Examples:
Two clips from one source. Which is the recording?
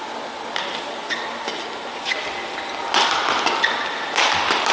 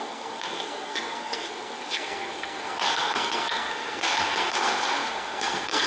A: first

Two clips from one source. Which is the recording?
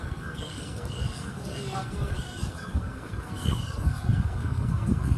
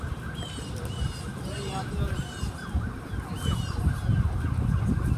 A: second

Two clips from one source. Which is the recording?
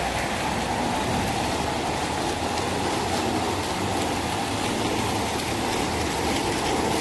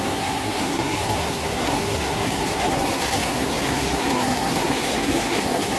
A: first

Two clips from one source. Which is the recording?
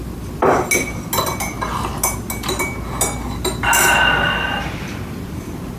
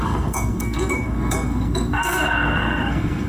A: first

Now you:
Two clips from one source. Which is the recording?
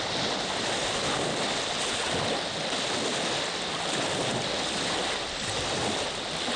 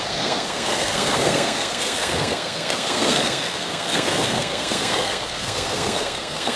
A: first